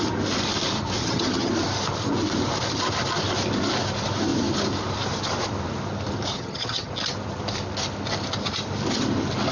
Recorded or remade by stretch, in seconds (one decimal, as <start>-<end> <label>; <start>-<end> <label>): 0.0-1.0 recorded; 1.0-1.5 remade; 1.5-6.3 recorded; 6.3-6.9 remade; 6.9-9.5 recorded